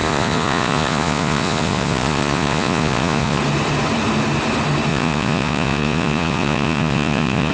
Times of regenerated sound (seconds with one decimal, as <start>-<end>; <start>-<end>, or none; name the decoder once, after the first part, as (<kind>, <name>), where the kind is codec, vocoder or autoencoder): 0.0-3.4 (vocoder, Vocos); 4.9-7.5